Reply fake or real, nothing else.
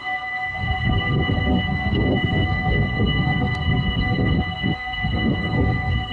fake